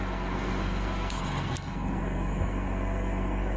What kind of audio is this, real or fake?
fake